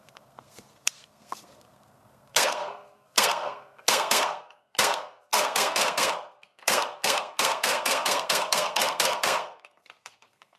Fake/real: fake